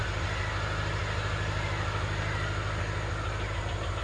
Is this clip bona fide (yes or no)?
yes